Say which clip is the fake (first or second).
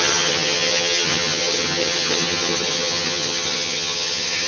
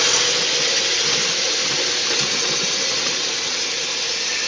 first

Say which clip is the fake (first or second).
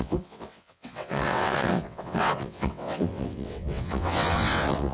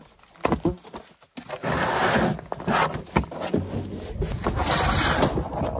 first